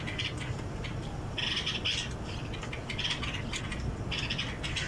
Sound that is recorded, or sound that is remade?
recorded